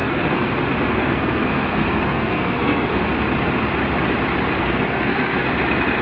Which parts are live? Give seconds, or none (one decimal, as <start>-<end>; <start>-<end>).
0.5-0.9; 3.0-4.6; 5.5-6.0

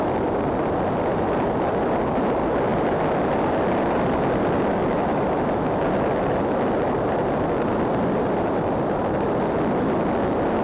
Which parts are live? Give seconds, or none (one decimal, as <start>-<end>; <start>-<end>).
0.0-10.6

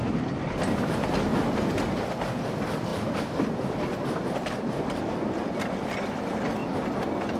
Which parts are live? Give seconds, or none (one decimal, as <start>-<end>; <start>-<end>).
0.0-2.9; 5.0-7.4

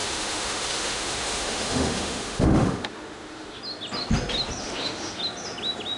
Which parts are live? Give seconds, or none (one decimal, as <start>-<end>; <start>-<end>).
3.6-4.6; 5.2-6.0

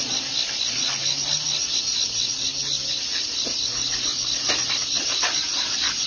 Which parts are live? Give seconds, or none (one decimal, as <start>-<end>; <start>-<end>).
0.0-6.1

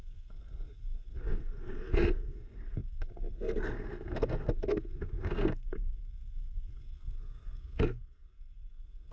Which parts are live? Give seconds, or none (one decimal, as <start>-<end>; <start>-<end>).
none